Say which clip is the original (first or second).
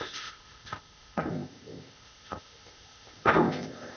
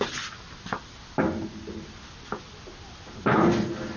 second